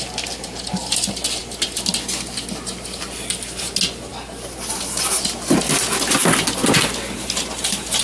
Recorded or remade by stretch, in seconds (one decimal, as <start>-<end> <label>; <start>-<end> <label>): 0.0-8.0 recorded